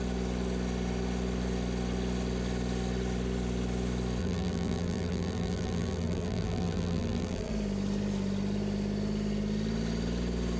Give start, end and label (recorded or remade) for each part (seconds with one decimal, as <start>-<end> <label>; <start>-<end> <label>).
0.0-4.2 recorded; 4.2-7.5 remade; 7.5-10.6 recorded